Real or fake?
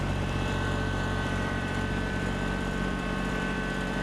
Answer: fake